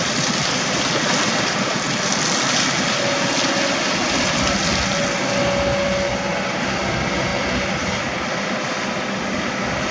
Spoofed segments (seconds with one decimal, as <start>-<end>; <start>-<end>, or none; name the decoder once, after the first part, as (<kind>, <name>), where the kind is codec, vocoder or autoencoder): none